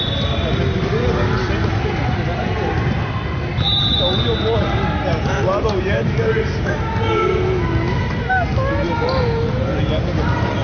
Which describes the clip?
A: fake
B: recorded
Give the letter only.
B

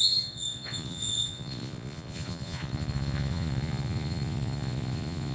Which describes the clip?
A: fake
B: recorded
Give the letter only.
A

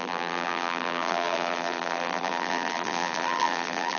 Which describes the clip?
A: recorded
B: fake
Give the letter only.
B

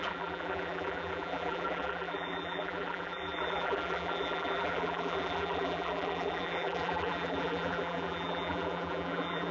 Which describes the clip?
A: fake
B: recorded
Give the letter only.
A